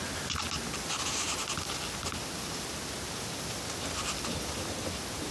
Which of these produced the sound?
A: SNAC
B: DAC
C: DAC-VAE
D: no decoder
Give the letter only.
D